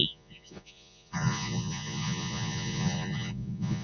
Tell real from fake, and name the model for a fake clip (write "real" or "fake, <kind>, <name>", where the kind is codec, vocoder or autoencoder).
fake, vocoder, Vocos